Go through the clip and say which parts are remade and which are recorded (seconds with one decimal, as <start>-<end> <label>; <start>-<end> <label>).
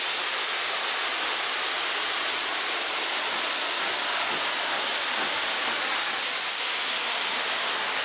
0.0-8.0 recorded